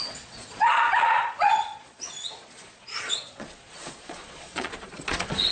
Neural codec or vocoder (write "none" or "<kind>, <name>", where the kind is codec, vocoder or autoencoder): vocoder, Vocos